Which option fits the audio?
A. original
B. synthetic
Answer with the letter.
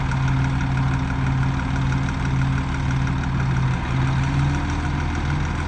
A